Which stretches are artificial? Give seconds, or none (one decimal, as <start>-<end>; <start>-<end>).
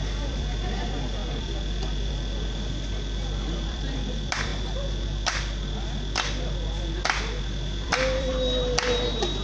0.0-4.5; 7.4-9.4